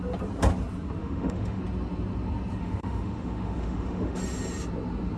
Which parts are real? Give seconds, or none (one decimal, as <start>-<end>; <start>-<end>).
0.0-1.0; 1.6-2.6; 4.2-5.2